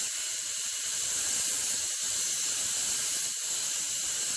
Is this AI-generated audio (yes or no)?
no